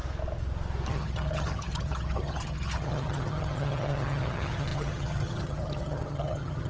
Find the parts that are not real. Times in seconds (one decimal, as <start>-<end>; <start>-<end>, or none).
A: 0.9-6.7